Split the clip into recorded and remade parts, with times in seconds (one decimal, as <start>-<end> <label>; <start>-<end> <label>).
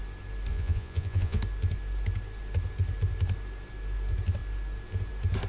0.0-0.5 recorded; 0.5-1.4 remade; 1.4-5.5 recorded